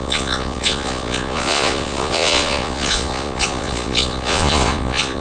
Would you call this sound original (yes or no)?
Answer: no